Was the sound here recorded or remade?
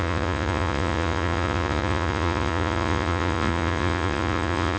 remade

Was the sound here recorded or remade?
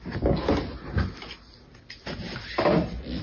recorded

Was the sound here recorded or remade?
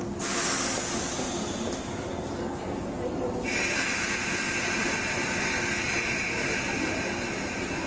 recorded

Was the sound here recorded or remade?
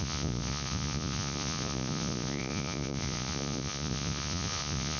remade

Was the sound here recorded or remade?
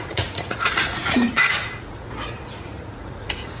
remade